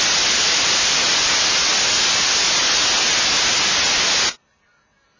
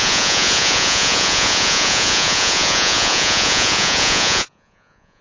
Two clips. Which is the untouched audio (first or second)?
first